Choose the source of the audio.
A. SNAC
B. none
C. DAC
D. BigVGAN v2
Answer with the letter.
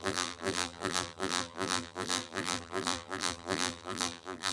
D